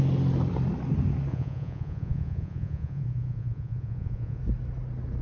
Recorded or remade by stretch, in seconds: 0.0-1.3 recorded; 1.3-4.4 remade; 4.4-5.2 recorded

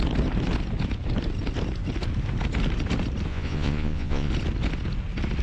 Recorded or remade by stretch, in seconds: 0.0-3.3 recorded; 3.3-4.3 remade; 4.3-5.4 recorded

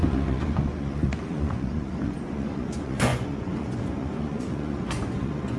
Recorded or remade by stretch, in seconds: 0.0-5.6 remade

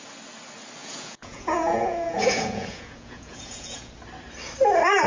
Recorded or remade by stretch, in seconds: 0.0-0.8 recorded; 0.8-3.9 remade; 3.9-5.1 recorded

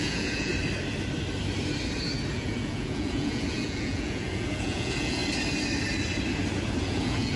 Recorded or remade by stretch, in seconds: 0.0-0.5 remade; 0.5-2.3 recorded; 2.3-5.2 remade; 5.2-6.8 recorded; 6.8-7.4 remade

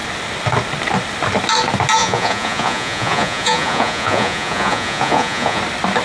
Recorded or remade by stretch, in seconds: 0.0-2.0 recorded; 2.0-5.6 remade; 5.6-6.0 recorded

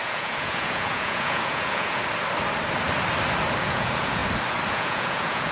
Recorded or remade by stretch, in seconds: 0.0-2.0 remade; 2.0-3.6 recorded; 3.6-4.2 remade; 4.2-4.7 recorded; 4.7-5.5 remade

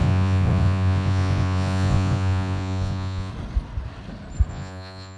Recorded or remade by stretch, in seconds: 0.0-3.3 remade; 3.3-4.5 recorded; 4.5-5.2 remade